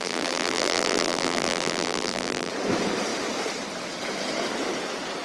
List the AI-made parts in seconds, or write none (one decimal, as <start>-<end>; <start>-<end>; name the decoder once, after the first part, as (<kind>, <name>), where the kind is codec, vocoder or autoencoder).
0.0-2.5 (vocoder, BigVGAN v2)